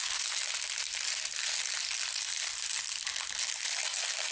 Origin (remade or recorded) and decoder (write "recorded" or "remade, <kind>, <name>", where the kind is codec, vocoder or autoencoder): recorded